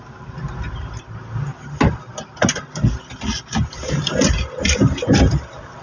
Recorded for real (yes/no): yes